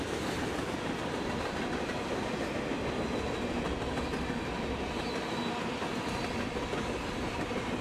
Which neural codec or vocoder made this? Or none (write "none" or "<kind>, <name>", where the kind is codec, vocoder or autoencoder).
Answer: none